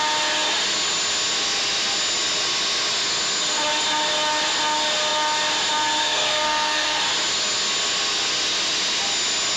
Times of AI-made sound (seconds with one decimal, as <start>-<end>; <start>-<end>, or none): 6.0-7.0